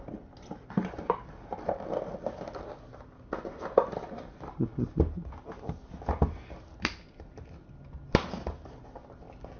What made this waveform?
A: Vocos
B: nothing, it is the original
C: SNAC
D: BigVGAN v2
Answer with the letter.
B